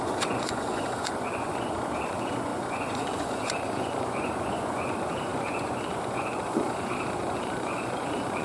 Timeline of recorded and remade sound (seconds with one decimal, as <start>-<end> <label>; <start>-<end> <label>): 0.0-8.4 remade